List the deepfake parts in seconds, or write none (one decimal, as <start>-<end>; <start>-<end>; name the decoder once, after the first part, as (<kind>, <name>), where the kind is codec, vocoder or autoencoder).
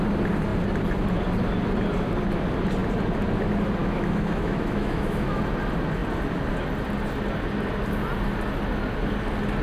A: 3.8-5.4 (autoencoder, DAC-VAE)